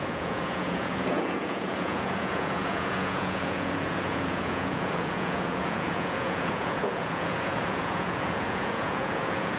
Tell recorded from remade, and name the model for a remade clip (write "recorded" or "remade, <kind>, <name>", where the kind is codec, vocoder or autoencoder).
remade, vocoder, Vocos